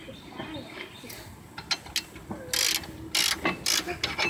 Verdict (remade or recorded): recorded